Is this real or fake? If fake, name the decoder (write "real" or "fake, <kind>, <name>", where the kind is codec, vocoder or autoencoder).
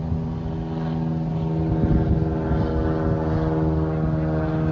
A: real